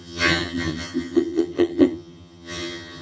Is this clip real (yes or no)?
no